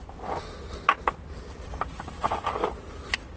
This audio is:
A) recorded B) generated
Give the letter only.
A